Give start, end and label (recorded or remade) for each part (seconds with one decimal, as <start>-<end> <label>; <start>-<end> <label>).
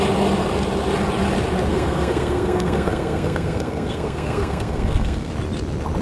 0.0-1.7 recorded; 1.7-5.3 remade; 5.3-6.0 recorded